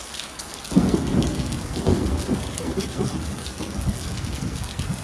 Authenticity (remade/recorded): remade